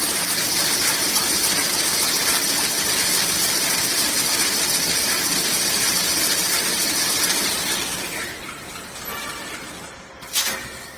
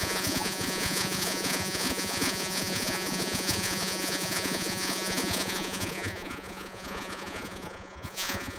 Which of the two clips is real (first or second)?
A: first